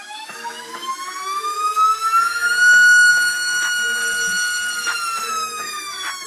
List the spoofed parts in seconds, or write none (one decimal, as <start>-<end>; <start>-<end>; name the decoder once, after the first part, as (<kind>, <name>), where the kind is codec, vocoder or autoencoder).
0.0-4.0 (autoencoder, DAC-VAE); 5.3-6.3